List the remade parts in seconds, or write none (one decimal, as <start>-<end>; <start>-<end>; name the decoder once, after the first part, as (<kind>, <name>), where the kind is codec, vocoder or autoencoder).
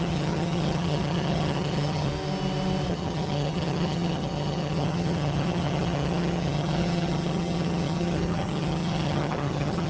0.0-2.1 (vocoder, HiFi-GAN); 2.9-9.9